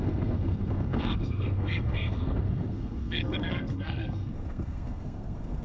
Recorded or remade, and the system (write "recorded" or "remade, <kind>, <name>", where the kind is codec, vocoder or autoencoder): remade, codec, SNAC